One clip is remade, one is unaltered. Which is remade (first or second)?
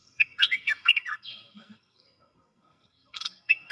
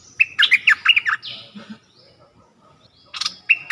first